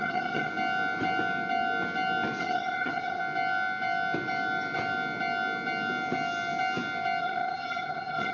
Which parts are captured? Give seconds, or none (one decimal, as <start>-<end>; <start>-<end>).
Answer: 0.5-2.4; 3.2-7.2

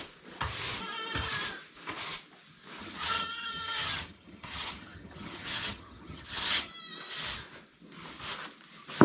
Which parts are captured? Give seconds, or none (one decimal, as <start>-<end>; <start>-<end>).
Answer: 0.0-2.8; 6.7-9.0

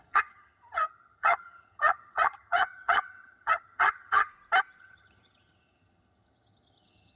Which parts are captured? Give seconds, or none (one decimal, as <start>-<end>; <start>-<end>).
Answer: 4.3-4.8

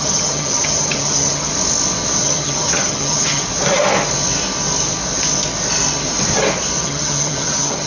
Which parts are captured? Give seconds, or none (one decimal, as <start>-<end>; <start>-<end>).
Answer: 1.5-2.2; 3.4-6.8

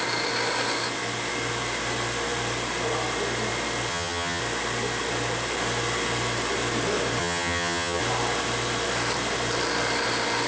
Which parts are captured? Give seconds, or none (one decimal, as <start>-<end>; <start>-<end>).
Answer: 0.0-3.9; 4.4-7.2; 8.0-10.5

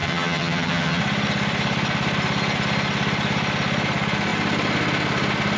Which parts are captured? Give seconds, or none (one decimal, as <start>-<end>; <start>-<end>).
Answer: 1.0-5.6